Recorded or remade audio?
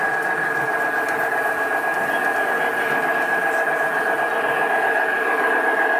recorded